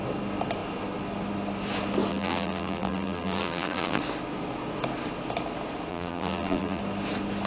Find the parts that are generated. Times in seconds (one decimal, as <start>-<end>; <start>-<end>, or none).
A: 2.1-4.0; 5.9-6.8